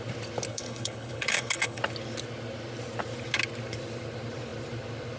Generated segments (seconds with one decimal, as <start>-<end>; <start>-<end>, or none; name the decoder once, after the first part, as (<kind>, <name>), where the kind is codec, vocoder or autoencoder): 0.5-1.8 (codec, HILCodec)